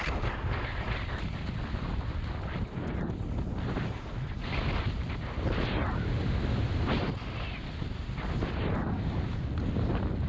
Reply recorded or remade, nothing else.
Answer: recorded